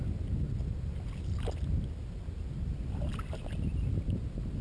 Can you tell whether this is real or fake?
real